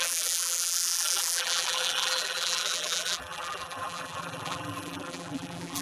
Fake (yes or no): yes